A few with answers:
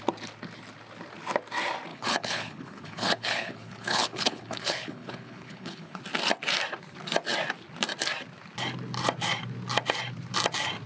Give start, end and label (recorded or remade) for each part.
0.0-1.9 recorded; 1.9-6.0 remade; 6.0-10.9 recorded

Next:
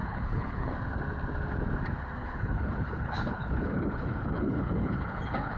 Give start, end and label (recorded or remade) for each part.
0.0-0.7 remade; 0.7-2.2 recorded; 2.2-5.6 remade

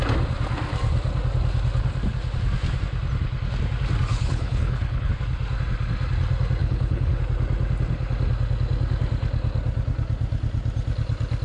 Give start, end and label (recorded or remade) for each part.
0.0-4.1 recorded; 4.1-5.1 remade; 5.1-6.6 recorded; 6.6-7.2 remade; 7.2-11.4 recorded

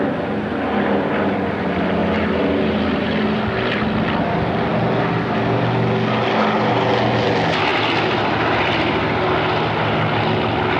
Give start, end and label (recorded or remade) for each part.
0.0-10.8 recorded

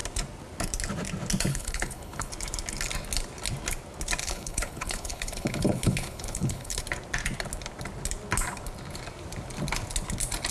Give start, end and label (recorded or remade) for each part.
0.0-1.5 recorded; 1.5-2.3 remade; 2.3-4.2 recorded; 4.2-6.8 remade; 6.8-10.5 recorded

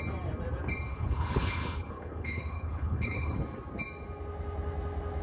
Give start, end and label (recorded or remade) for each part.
0.0-0.9 recorded; 0.9-3.4 remade; 3.4-5.2 recorded

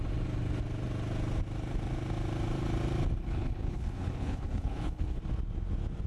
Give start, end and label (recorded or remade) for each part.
0.0-3.2 recorded; 3.2-5.2 remade; 5.2-6.1 recorded

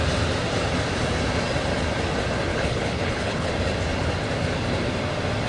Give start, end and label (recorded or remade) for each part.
0.0-2.5 recorded; 2.5-3.5 remade; 3.5-5.5 recorded